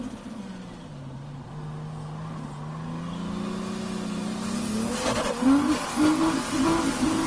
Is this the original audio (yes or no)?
yes